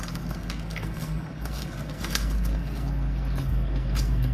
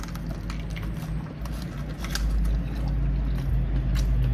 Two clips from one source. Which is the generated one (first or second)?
first